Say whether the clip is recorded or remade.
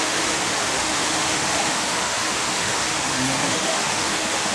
remade